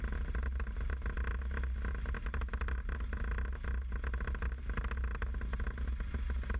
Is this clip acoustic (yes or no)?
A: yes